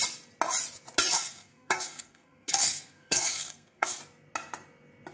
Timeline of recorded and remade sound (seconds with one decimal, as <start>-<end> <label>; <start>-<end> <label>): 0.0-1.1 recorded; 1.1-4.0 remade; 4.0-5.1 recorded